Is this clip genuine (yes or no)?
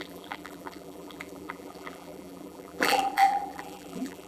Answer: no